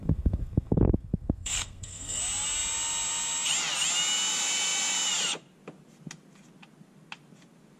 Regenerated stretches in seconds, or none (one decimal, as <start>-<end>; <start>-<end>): 0.0-2.2